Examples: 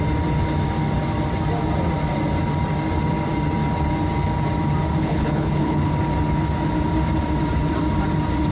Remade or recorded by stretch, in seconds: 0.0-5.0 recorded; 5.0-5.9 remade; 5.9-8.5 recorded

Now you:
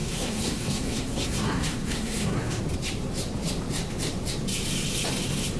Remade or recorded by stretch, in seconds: 0.0-2.6 remade; 2.6-5.6 recorded

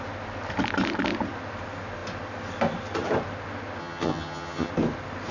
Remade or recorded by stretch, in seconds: 0.0-3.8 recorded; 3.8-4.7 remade; 4.7-5.3 recorded

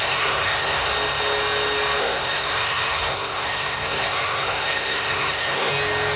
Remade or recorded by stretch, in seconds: 0.0-0.9 remade; 0.9-2.0 recorded; 2.0-5.7 remade; 5.7-6.2 recorded

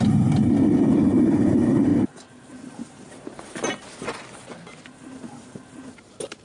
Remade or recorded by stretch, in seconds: 0.0-0.4 remade; 0.4-1.0 recorded; 1.0-1.9 remade; 1.9-2.5 recorded; 2.5-3.6 remade; 3.6-5.0 recorded; 5.0-6.4 remade

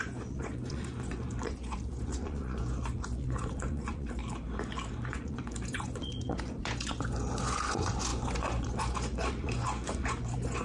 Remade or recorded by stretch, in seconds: 0.0-4.2 remade; 4.2-4.9 recorded; 4.9-10.6 remade

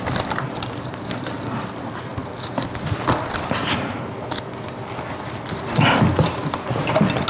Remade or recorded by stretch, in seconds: 0.0-7.3 recorded